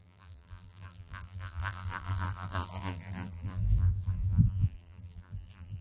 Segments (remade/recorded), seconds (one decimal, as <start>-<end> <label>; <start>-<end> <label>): 0.0-5.8 remade